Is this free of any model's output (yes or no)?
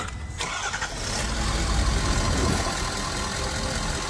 yes